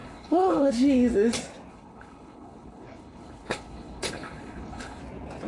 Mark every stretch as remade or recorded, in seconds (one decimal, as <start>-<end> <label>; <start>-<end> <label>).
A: 0.0-0.7 remade; 0.7-1.7 recorded; 1.7-5.0 remade; 5.0-5.5 recorded